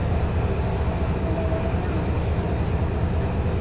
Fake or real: real